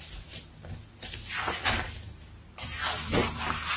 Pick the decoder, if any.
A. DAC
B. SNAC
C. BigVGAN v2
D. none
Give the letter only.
D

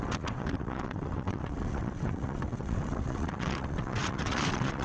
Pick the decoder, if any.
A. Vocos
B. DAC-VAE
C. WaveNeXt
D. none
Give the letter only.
C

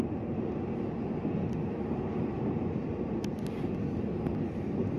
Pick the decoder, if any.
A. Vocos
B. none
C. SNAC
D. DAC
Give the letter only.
B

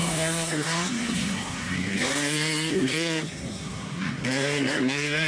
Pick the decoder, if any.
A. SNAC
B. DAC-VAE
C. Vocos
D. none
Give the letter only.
A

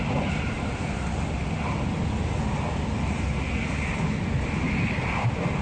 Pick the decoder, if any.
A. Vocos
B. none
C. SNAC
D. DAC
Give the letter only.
B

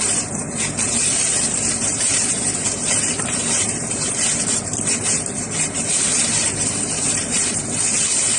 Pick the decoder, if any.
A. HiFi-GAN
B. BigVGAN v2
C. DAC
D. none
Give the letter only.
B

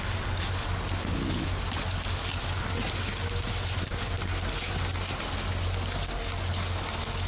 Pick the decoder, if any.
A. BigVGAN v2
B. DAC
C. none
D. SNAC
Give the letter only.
C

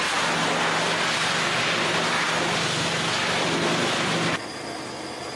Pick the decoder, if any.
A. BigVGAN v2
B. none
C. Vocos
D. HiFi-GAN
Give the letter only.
B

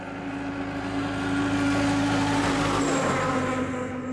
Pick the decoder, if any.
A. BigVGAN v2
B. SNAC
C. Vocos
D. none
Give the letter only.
D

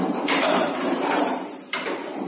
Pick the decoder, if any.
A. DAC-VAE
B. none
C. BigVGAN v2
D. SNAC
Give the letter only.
C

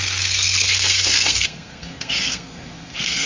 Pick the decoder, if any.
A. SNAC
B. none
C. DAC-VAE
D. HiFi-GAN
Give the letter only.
A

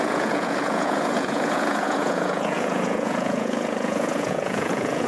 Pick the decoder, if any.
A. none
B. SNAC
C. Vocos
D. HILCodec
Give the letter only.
C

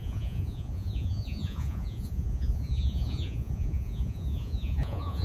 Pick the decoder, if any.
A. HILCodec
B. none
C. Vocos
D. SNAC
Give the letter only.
C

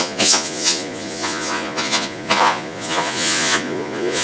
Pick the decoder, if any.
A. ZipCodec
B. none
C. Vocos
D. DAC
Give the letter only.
C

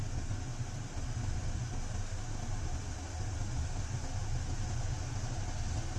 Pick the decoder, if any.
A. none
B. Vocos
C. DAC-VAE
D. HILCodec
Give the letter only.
A